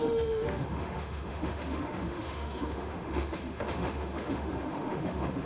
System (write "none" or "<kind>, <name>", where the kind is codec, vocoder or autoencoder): autoencoder, DAC-VAE